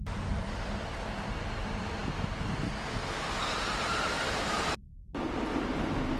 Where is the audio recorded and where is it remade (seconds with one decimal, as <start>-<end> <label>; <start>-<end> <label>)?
0.0-2.0 remade; 2.0-3.4 recorded; 3.4-6.2 remade